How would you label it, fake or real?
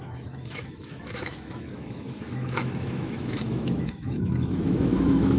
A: fake